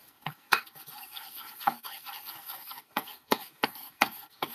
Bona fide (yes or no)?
no